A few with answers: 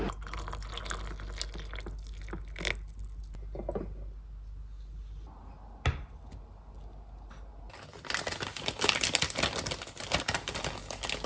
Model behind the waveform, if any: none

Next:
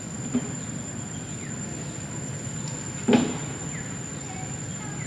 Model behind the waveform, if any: none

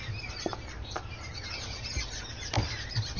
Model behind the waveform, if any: none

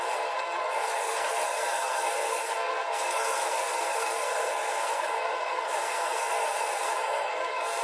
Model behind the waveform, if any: codec, SNAC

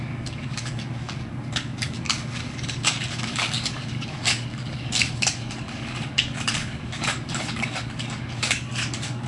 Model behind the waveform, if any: codec, DAC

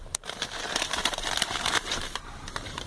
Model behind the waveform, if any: vocoder, BigVGAN v2